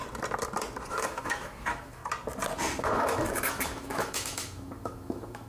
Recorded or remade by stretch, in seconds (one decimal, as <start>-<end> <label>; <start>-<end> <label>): 0.0-0.9 recorded; 0.9-2.0 remade; 2.0-2.8 recorded; 2.8-5.5 remade